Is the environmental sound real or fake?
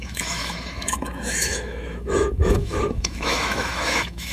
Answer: fake